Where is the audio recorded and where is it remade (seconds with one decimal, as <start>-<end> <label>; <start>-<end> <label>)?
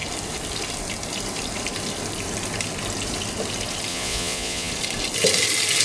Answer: 0.0-3.9 recorded; 3.9-4.7 remade; 4.7-5.8 recorded